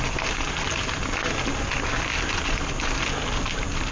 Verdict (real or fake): real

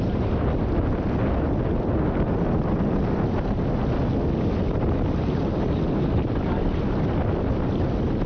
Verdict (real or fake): real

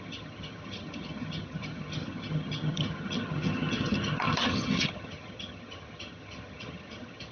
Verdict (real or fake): fake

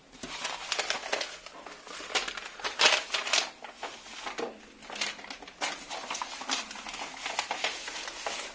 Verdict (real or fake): real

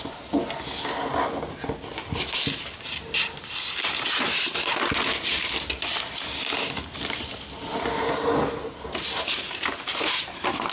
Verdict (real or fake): real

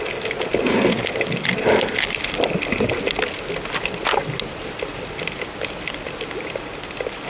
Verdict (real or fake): real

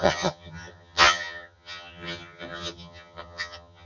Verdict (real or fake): fake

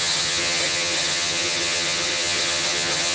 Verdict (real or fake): fake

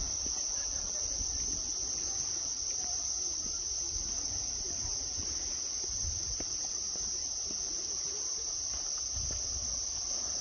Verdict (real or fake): real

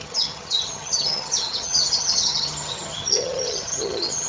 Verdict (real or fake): fake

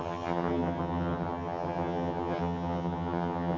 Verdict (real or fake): fake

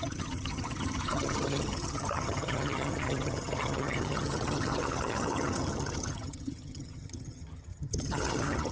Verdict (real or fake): fake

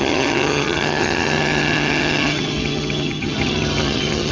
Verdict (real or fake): fake